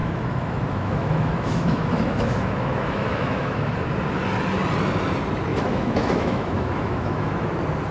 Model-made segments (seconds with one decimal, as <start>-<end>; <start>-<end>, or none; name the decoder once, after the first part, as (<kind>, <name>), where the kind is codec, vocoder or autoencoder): 0.0-3.9 (autoencoder, DAC-VAE); 5.5-7.5